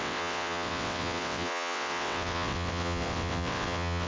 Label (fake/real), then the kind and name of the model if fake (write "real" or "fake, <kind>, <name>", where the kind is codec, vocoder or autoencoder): fake, vocoder, WaveNeXt